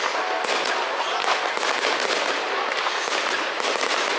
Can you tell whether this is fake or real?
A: real